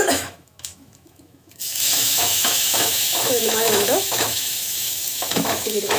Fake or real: fake